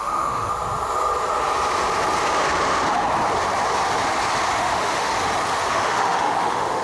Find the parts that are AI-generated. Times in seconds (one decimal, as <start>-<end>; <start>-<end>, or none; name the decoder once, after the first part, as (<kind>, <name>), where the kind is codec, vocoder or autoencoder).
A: 0.0-0.5 (autoencoder, DAC-VAE); 4.6-5.1; 5.7-6.8